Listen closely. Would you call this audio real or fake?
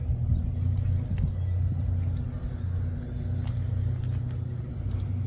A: real